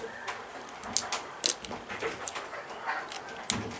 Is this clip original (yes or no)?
yes